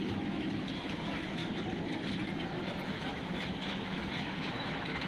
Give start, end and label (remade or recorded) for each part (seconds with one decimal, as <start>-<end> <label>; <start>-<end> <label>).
0.0-1.4 remade; 1.4-2.6 recorded; 2.6-5.1 remade